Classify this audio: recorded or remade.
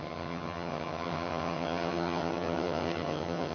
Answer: remade